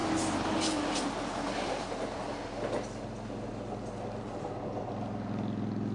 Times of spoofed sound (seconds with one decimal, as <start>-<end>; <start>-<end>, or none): none